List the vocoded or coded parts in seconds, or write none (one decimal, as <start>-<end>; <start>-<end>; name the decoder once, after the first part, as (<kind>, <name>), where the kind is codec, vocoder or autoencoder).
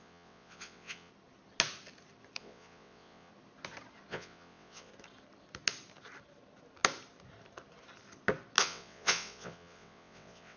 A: 0.0-1.1 (vocoder, WaveNeXt); 2.4-3.3; 4.1-4.9; 8.6-10.6